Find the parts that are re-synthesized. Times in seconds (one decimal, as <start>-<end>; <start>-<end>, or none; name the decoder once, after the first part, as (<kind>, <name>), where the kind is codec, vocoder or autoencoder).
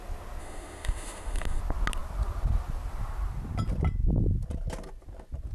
0.4-1.6 (autoencoder, DAC-VAE)